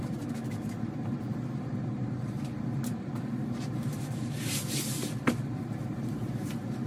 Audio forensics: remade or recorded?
remade